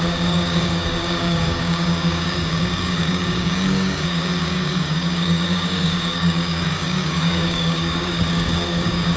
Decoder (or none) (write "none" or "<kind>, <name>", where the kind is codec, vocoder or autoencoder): codec, DAC